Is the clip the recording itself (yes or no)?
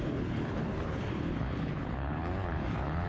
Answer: no